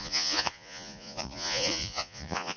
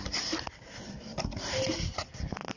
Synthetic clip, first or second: first